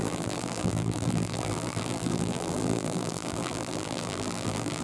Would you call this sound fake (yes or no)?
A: yes